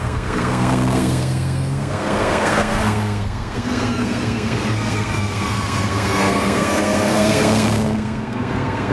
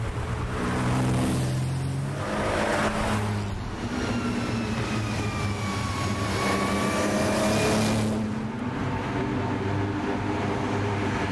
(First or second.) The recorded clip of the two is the second